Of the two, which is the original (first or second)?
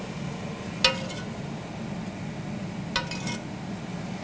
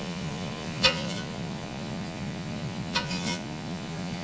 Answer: first